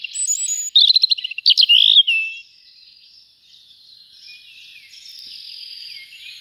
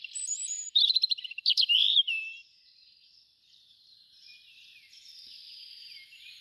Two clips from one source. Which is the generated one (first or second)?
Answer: second